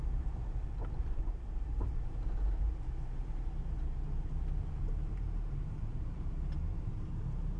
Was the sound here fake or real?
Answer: fake